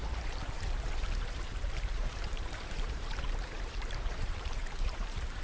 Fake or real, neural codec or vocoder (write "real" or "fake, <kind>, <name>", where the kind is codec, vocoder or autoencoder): fake, vocoder, BigVGAN v2